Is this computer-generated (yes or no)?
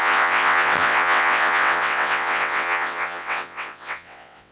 yes